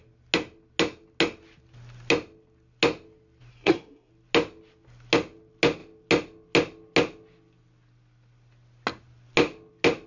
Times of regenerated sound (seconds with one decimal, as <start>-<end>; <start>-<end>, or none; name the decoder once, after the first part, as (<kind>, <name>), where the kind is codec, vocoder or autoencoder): 3.5-4.1 (codec, SNAC)